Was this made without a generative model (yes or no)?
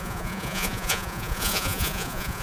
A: no